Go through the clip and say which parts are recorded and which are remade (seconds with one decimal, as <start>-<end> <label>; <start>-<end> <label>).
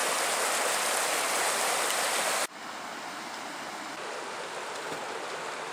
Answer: 0.0-5.7 recorded